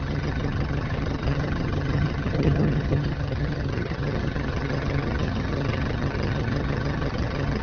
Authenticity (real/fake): fake